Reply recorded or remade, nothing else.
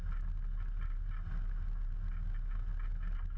recorded